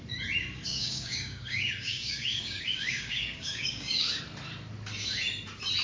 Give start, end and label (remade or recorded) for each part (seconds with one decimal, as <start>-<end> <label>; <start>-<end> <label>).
0.0-0.7 recorded; 0.7-4.2 remade; 4.2-5.8 recorded